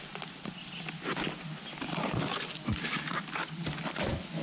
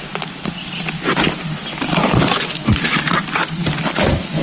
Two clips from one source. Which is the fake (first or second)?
second